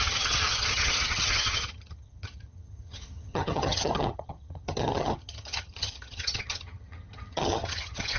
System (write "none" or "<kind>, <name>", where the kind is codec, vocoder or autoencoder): vocoder, HiFi-GAN